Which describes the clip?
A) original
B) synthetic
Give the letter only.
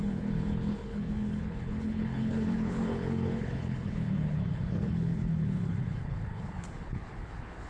B